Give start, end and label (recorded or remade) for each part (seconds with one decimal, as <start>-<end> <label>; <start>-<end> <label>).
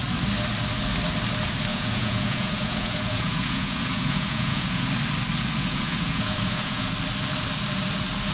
0.0-1.7 recorded; 1.7-4.9 remade; 4.9-5.6 recorded; 5.6-6.9 remade; 6.9-8.3 recorded